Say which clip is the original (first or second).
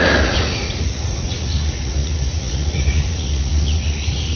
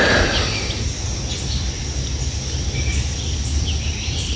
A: second